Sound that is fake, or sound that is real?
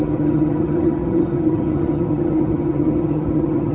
fake